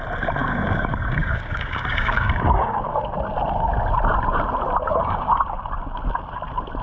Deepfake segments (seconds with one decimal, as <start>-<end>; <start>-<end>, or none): 0.4-3.0; 4.9-5.4